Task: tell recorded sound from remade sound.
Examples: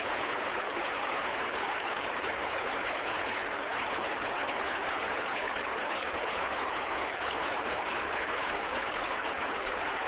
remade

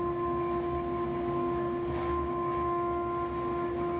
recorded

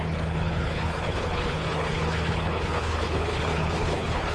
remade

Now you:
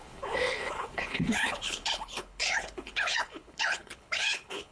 remade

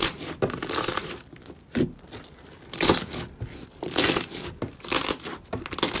recorded